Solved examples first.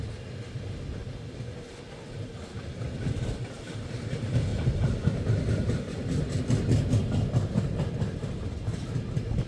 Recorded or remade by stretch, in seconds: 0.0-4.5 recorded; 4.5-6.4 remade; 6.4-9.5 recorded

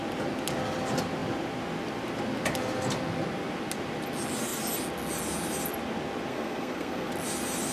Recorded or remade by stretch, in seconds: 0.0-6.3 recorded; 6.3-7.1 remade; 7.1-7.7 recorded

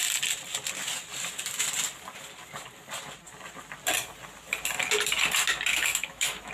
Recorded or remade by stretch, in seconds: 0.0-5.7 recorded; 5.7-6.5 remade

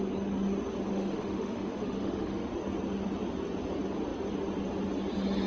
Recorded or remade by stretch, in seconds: 0.0-0.9 recorded; 0.9-2.5 remade; 2.5-5.5 recorded